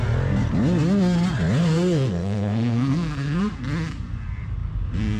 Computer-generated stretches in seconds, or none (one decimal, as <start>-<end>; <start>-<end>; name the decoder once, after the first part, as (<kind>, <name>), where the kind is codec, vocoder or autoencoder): 1.6-3.4 (codec, SNAC)